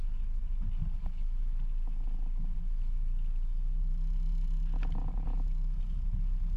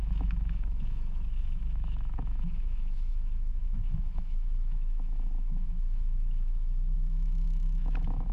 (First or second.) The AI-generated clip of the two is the second